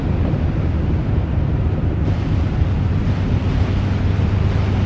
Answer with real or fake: real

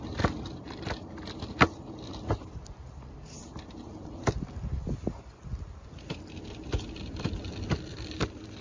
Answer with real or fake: fake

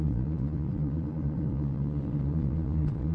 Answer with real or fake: fake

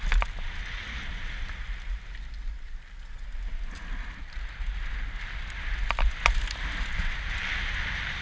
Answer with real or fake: real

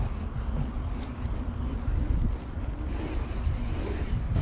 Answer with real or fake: real